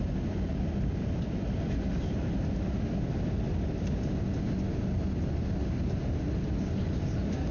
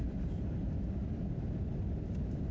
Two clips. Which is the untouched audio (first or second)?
first